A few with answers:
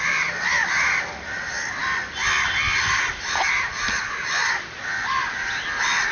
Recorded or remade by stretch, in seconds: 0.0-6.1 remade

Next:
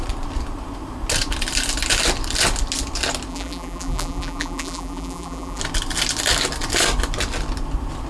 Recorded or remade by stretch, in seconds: 0.0-3.3 recorded; 3.3-5.6 remade; 5.6-8.1 recorded